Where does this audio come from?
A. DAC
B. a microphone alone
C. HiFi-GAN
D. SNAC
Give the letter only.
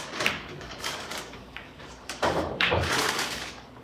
A